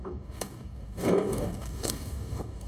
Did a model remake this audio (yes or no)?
yes